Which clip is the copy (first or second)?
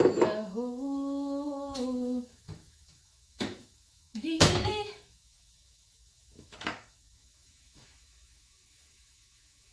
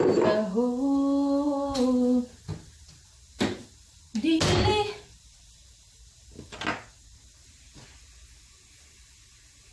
first